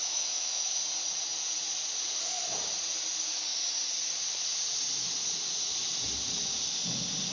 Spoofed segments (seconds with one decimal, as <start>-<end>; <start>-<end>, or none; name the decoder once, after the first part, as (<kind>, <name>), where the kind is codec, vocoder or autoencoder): 0.0-0.8 (autoencoder, DAC-VAE)

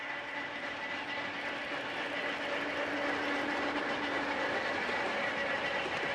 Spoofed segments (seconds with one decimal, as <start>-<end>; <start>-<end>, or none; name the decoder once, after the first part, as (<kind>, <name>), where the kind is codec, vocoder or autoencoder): none

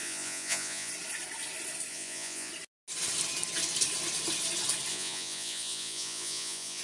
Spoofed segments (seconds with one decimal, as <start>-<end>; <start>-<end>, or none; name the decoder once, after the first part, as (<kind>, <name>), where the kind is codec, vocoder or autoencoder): 0.0-0.9 (vocoder, Vocos); 1.9-2.5; 4.9-6.8

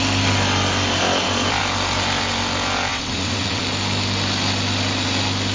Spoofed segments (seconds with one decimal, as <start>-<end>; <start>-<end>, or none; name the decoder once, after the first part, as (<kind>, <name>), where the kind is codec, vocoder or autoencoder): 2.9-3.6 (vocoder, WaveNeXt)

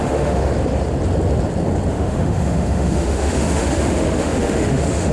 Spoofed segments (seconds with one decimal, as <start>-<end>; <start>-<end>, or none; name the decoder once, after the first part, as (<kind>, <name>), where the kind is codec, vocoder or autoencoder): 0.0-0.5 (autoencoder, DAC-VAE); 1.9-5.1